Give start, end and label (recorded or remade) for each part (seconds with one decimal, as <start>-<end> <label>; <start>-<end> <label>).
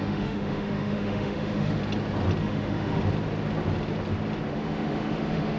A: 0.0-1.8 remade; 1.8-2.4 recorded; 2.4-3.0 remade; 3.0-4.5 recorded; 4.5-5.6 remade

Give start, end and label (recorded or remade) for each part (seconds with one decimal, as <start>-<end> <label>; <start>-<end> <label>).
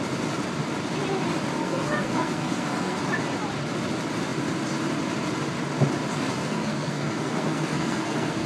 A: 0.0-1.6 recorded; 1.6-3.0 remade; 3.0-6.4 recorded; 6.4-8.5 remade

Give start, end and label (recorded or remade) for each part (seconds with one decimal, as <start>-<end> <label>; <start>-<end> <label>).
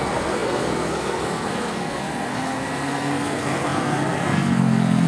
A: 0.0-5.1 remade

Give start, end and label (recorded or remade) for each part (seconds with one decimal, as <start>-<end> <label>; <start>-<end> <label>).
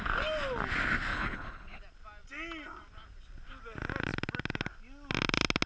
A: 0.0-1.1 recorded; 1.1-1.8 remade; 1.8-5.7 recorded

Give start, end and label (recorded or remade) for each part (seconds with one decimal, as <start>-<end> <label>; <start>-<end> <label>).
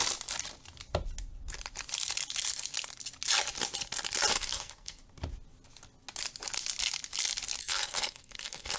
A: 0.0-4.3 recorded; 4.3-5.0 remade; 5.0-7.6 recorded; 7.6-8.8 remade